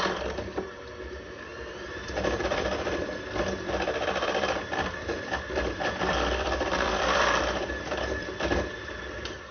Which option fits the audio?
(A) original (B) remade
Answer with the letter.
B